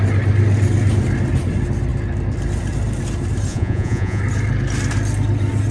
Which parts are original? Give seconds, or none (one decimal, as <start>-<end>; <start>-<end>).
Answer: 0.0-3.5; 4.2-5.7